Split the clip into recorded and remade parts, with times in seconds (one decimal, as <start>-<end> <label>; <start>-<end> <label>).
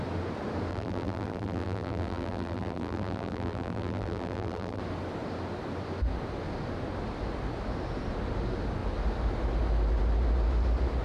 0.0-0.7 recorded; 0.7-4.8 remade; 4.8-11.0 recorded